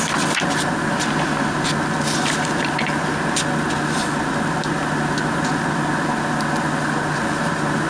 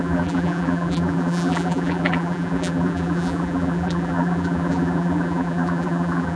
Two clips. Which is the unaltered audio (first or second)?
first